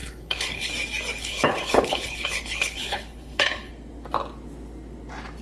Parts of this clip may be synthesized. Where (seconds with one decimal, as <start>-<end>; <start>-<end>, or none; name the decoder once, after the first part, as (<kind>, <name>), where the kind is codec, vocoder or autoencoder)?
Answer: 0.0-0.7 (codec, HILCodec); 1.2-3.7